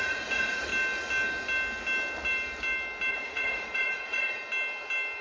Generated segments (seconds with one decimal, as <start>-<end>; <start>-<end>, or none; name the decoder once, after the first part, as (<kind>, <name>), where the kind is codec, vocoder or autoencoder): 0.0-0.7 (vocoder, Vocos); 3.1-4.4